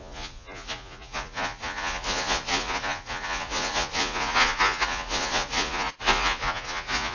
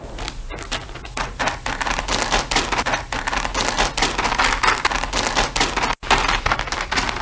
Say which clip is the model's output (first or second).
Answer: first